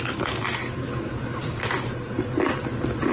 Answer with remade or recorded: remade